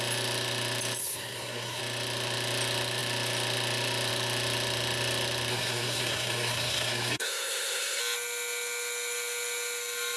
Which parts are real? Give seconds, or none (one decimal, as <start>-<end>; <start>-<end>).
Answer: 0.0-1.0; 1.8-5.5; 8.0-10.2